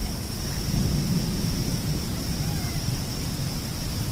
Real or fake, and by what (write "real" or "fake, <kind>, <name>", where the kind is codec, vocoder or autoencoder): fake, vocoder, BigVGAN v2